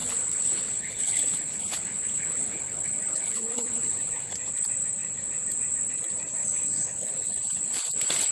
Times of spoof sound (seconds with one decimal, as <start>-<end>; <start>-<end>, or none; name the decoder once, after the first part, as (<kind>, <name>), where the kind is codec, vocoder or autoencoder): 0.0-4.3 (codec, HILCodec); 6.4-7.6